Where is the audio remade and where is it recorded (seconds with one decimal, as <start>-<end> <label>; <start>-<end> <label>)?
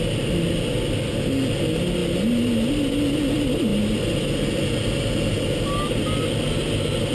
0.0-7.1 recorded